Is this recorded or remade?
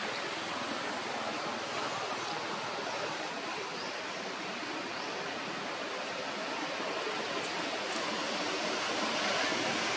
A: recorded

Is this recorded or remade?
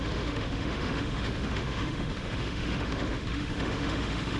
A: remade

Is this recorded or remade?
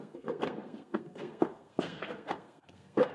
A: remade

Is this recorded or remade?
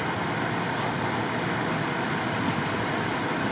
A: recorded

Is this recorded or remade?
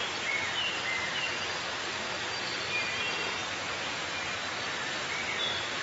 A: recorded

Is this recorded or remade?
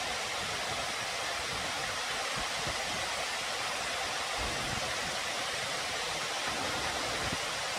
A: recorded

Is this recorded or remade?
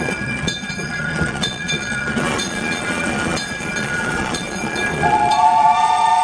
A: remade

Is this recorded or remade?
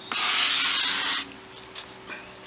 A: recorded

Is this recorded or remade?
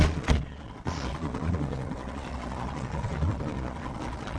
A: remade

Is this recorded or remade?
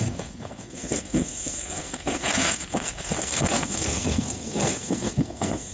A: remade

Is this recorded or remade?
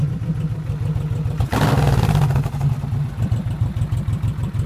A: recorded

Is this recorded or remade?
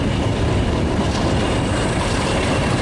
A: recorded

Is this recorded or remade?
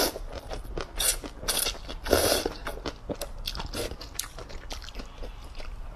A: recorded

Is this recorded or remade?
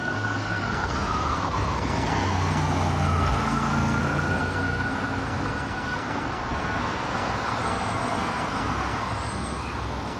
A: remade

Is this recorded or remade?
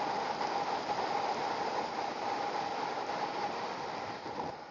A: recorded